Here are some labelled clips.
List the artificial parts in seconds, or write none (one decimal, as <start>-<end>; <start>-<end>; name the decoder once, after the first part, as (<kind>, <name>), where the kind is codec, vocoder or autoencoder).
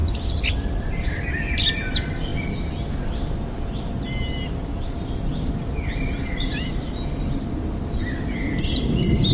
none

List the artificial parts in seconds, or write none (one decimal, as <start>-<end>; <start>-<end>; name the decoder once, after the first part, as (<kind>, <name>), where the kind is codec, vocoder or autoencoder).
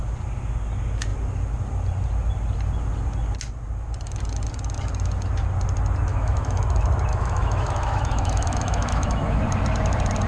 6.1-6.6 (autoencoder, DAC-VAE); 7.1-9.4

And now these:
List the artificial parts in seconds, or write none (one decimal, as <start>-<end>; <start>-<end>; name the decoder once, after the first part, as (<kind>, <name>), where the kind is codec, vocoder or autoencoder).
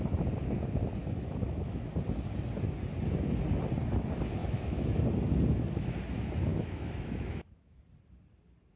1.0-1.9 (autoencoder, DAC-VAE); 4.4-5.0; 6.5-7.8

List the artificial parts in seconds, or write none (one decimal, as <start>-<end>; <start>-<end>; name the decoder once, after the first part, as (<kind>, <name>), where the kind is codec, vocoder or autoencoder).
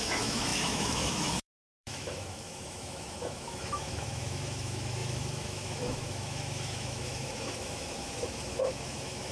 0.0-9.3 (autoencoder, DAC-VAE)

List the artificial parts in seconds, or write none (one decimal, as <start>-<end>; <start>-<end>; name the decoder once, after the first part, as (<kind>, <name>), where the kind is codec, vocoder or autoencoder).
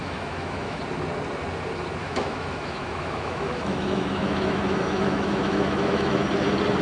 0.0-0.8 (autoencoder, DAC-VAE); 2.0-6.1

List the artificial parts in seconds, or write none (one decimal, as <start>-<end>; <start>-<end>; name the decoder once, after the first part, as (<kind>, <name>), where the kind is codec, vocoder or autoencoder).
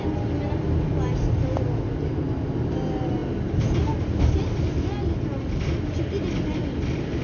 none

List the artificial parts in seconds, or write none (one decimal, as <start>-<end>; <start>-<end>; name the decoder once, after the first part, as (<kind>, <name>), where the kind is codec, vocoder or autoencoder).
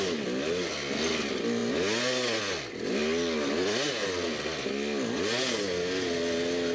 none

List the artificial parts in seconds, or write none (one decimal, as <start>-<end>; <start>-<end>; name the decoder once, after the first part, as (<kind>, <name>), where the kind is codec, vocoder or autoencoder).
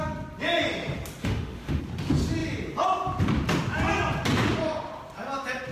1.2-1.8 (autoencoder, DAC-VAE)